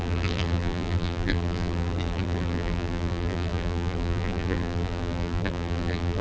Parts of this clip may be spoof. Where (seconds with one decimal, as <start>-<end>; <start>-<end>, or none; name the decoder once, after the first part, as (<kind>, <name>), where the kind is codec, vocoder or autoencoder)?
0.0-6.2 (vocoder, BigVGAN v2)